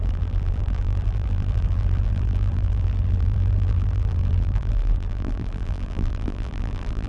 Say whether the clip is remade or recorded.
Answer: remade